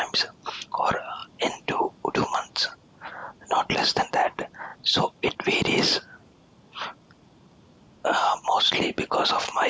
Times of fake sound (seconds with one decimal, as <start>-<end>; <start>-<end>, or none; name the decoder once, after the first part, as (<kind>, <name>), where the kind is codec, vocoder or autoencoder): 1.2-2.6 (vocoder, BigVGAN v2); 3.2-4.0; 4.7-7.8